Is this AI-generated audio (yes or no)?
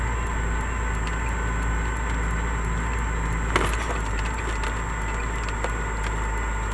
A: no